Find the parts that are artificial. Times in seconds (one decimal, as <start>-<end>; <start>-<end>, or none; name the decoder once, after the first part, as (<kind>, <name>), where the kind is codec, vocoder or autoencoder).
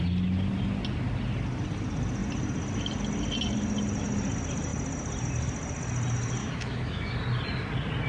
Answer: 6.4-7.1 (autoencoder, DAC-VAE)